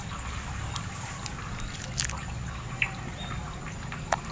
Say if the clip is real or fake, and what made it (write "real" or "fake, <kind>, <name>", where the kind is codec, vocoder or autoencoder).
real